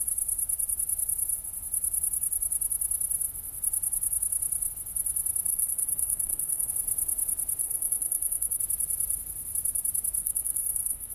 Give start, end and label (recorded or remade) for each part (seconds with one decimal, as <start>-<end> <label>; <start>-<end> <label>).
0.0-5.5 recorded; 5.5-6.7 remade; 6.7-7.6 recorded; 7.6-8.6 remade; 8.6-10.2 recorded; 10.2-11.1 remade